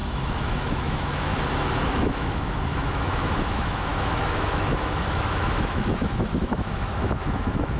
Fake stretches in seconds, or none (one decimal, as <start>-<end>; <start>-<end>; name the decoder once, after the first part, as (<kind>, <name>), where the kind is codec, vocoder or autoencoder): 0.0-1.3 (autoencoder, DAC-VAE); 1.9-7.8